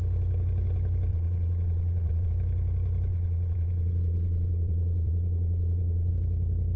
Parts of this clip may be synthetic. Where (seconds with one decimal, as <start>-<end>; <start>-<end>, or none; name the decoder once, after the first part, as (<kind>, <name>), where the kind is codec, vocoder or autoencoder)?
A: 1.1-2.3 (vocoder, Vocos); 3.1-6.1